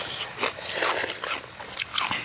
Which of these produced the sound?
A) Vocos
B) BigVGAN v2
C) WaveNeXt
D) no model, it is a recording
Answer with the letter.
D